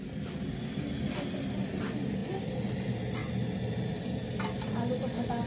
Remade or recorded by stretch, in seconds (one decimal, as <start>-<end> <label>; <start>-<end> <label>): 0.0-5.5 recorded